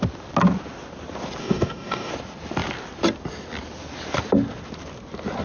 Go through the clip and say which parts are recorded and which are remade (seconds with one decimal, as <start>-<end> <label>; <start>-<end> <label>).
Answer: 0.0-1.4 recorded; 1.4-2.1 remade; 2.1-5.4 recorded